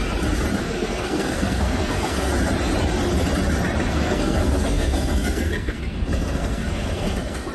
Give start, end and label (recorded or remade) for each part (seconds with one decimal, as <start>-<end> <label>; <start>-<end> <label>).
0.0-0.6 recorded; 0.6-2.3 remade; 2.3-3.9 recorded; 3.9-7.5 remade